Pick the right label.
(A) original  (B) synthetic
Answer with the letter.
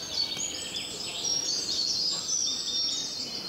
A